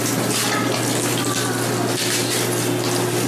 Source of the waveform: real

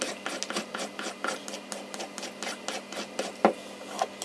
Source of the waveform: real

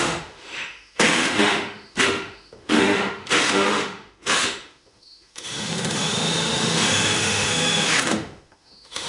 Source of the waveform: fake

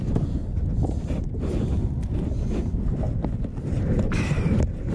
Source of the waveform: real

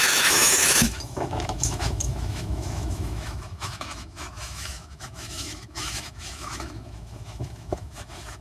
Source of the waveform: fake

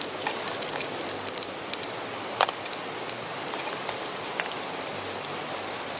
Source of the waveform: real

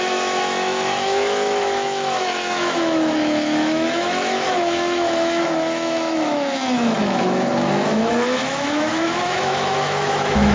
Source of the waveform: fake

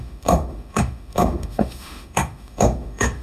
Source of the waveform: fake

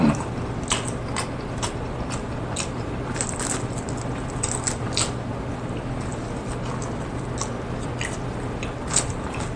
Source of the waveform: real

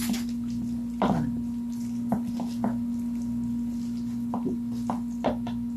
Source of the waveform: real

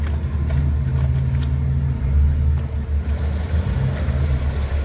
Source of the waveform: real